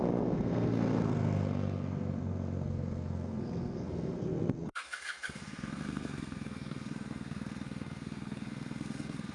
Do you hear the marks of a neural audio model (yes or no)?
yes